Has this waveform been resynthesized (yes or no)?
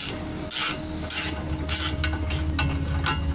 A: no